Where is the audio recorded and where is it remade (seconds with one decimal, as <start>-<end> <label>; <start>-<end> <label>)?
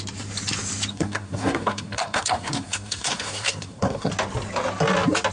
0.0-0.9 recorded; 0.9-4.1 remade; 4.1-5.3 recorded